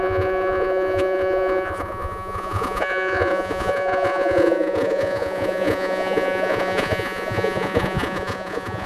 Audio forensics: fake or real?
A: fake